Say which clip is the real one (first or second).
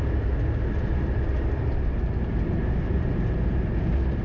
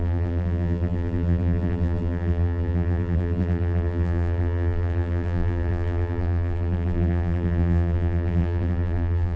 first